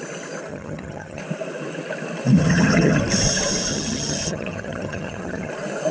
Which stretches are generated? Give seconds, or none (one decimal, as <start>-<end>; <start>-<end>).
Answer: 0.5-1.2; 2.4-3.0; 3.7-5.5